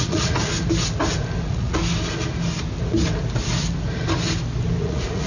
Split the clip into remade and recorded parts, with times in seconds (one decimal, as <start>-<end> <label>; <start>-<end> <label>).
0.0-0.4 remade; 0.4-1.4 recorded; 1.4-1.8 remade; 1.8-4.8 recorded; 4.8-5.3 remade